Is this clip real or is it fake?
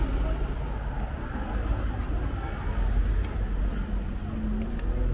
real